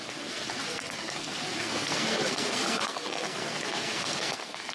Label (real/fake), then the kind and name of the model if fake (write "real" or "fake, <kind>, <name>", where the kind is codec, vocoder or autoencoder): fake, codec, SNAC